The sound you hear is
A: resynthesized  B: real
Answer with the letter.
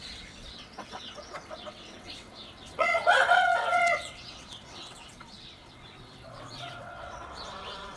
A